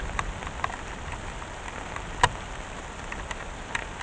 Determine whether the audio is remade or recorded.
recorded